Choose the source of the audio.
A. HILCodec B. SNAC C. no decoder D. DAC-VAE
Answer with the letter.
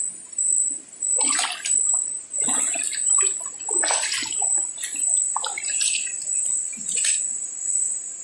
C